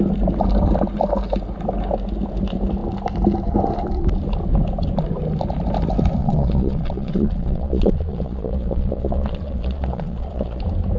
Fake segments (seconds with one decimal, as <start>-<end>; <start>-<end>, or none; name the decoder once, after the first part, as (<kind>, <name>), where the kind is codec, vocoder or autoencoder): 6.2-10.6 (vocoder, Vocos)